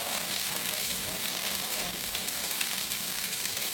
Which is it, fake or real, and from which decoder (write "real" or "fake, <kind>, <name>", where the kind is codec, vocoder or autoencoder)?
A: fake, codec, DAC